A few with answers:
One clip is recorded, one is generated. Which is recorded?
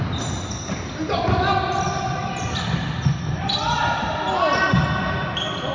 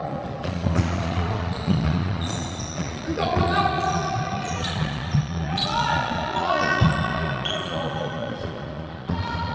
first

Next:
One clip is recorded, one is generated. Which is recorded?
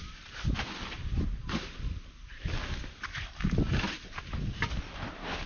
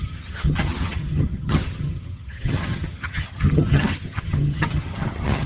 first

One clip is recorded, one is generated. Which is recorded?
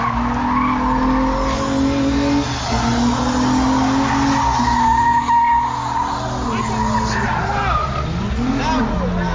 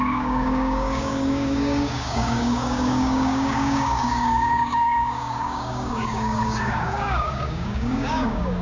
first